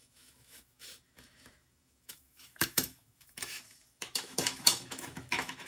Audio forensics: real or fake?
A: fake